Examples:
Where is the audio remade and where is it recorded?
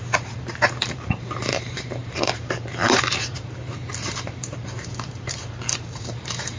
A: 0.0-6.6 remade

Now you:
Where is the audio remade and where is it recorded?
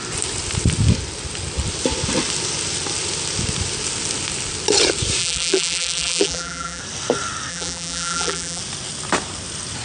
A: 0.0-5.2 recorded; 5.2-6.8 remade; 6.8-7.5 recorded; 7.5-8.6 remade; 8.6-9.8 recorded